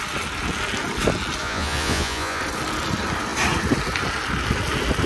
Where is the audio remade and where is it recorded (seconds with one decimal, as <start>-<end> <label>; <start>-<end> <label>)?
0.0-1.4 recorded; 1.4-2.4 remade; 2.4-5.1 recorded